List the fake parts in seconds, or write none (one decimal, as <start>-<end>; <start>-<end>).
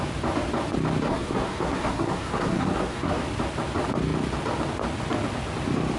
1.1-3.2